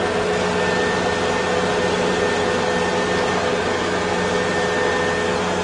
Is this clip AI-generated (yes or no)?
no